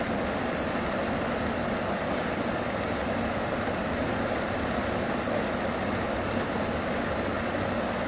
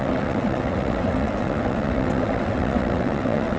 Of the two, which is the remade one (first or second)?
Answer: second